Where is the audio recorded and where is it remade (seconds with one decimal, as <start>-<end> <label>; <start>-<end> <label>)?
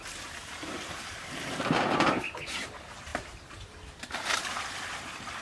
0.0-0.4 recorded; 0.4-2.2 remade; 2.2-3.1 recorded; 3.1-4.0 remade; 4.0-5.4 recorded